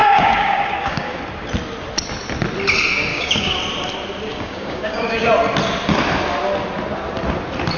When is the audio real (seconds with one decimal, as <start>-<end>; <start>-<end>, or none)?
1.2-3.1; 3.6-4.3; 5.3-7.8